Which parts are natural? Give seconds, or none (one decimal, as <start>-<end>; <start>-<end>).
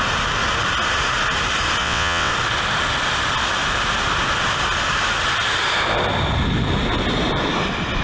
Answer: 0.0-1.8; 2.3-8.0